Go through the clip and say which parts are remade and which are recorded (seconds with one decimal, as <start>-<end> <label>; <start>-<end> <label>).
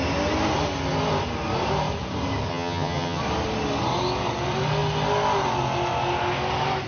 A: 0.0-2.5 recorded; 2.5-3.2 remade; 3.2-6.9 recorded